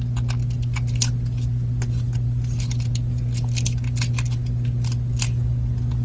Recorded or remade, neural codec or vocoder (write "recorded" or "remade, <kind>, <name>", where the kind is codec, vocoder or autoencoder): recorded